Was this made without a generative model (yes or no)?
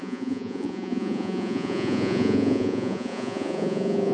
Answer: no